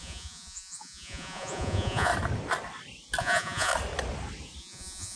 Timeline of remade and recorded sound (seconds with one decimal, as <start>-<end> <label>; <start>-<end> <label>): 0.0-2.1 remade; 2.1-3.2 recorded; 3.2-3.7 remade; 3.7-4.6 recorded; 4.6-5.2 remade